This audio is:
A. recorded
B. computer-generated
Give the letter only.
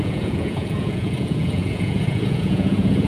B